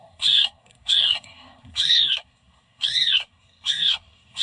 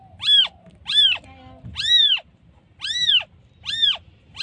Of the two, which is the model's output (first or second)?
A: first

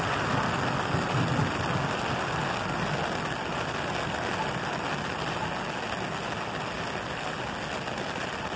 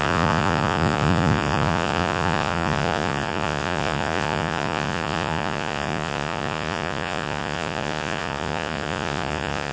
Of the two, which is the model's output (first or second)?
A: second